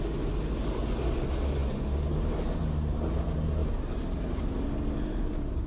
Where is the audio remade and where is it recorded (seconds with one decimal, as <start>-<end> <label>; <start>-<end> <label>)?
0.0-3.6 recorded; 3.6-4.7 remade; 4.7-5.7 recorded